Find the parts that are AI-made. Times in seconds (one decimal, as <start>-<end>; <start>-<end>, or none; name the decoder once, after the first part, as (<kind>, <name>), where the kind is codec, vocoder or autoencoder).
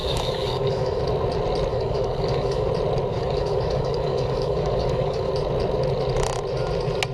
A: 0.0-1.0 (codec, DAC); 1.7-2.7; 3.1-5.3